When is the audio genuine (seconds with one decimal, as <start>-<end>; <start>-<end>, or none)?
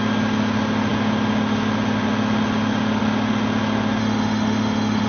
0.0-4.0